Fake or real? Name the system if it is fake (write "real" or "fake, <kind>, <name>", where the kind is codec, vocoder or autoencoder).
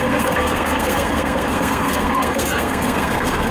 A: fake, codec, SNAC